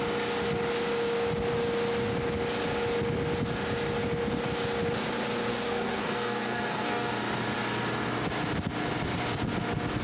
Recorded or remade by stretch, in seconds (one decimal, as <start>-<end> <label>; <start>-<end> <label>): 0.0-5.5 recorded; 5.5-7.1 remade; 7.1-10.0 recorded